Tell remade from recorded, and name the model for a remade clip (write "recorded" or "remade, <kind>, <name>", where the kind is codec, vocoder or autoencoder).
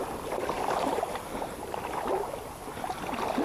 remade, vocoder, BigVGAN v2